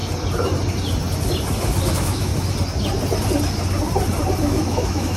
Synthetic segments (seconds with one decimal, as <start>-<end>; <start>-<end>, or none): 1.9-2.3; 4.4-5.2